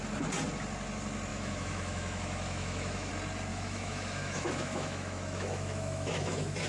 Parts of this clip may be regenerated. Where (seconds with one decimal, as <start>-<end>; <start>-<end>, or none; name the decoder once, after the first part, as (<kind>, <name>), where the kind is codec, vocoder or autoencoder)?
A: 1.3-3.1 (autoencoder, DAC-VAE); 3.5-6.7